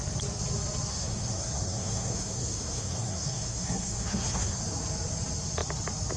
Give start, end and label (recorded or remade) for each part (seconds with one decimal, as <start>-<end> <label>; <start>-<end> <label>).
0.0-0.9 recorded; 0.9-4.6 remade; 4.6-6.2 recorded

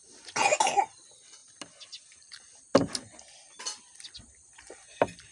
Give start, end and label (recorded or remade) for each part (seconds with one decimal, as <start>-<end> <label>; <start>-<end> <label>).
0.0-5.3 recorded

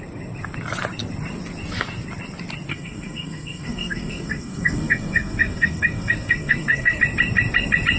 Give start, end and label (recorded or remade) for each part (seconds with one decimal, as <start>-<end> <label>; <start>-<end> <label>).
0.0-2.7 recorded; 2.7-7.0 remade; 7.0-8.0 recorded